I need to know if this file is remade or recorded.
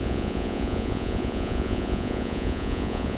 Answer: remade